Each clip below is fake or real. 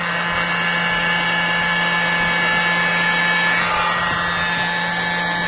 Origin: real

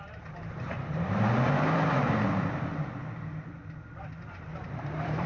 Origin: fake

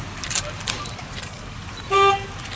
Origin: fake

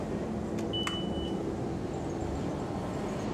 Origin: real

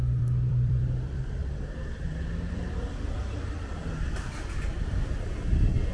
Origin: fake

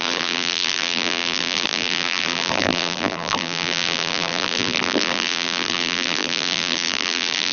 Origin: fake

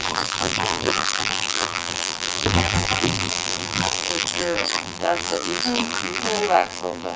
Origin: fake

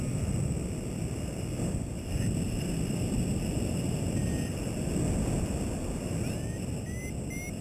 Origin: real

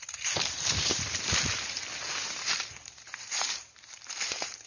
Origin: fake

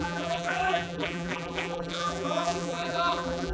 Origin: fake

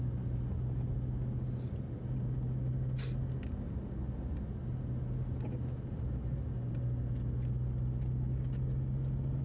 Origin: real